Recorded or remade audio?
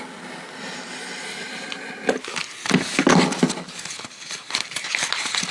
recorded